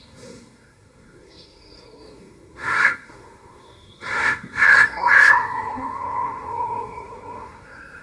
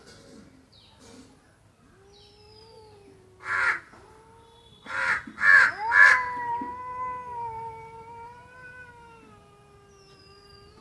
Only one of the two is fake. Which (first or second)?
first